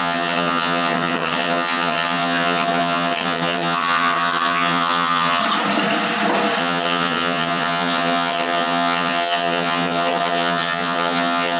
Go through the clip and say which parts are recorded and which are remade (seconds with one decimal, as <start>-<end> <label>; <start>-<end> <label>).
0.0-5.4 remade; 5.4-6.6 recorded; 6.6-11.6 remade